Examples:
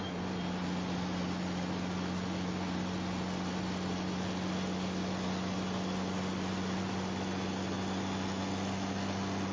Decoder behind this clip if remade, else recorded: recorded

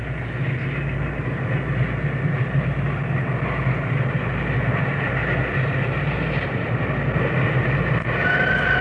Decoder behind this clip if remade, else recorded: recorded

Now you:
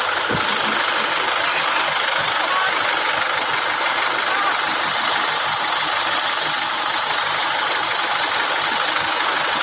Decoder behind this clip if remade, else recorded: recorded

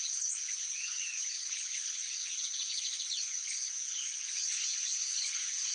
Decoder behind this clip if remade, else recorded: remade, codec, HILCodec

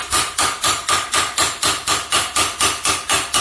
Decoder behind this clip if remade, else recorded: recorded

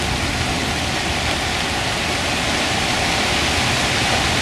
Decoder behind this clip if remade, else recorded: recorded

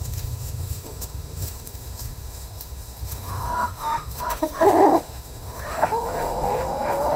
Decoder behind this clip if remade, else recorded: remade, autoencoder, DAC-VAE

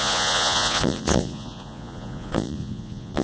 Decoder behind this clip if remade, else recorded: remade, vocoder, Vocos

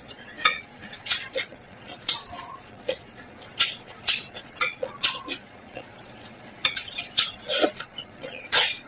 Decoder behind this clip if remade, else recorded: remade, vocoder, Vocos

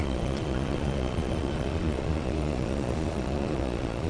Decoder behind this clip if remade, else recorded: remade, vocoder, Vocos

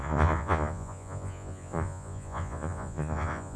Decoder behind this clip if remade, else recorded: remade, vocoder, Vocos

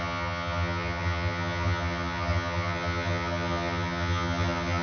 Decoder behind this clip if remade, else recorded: remade, vocoder, HiFi-GAN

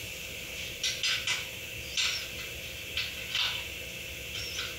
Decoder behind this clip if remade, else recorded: recorded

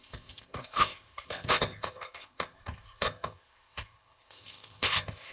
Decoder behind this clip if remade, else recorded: remade, codec, ZipCodec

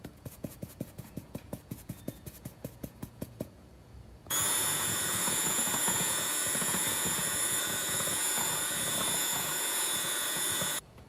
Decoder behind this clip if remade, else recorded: remade, vocoder, Vocos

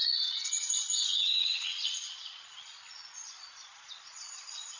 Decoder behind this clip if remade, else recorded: remade, vocoder, Vocos